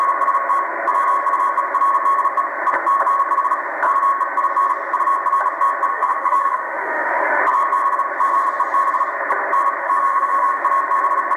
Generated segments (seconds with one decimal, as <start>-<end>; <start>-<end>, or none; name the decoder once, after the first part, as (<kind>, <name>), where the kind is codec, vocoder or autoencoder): 5.9-7.4 (autoencoder, DAC-VAE); 9.8-10.6